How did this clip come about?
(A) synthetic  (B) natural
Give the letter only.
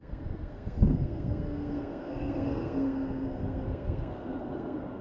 A